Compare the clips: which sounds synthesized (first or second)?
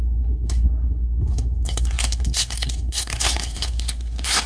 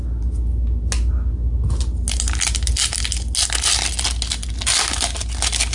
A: first